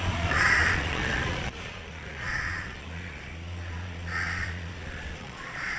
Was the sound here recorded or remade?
remade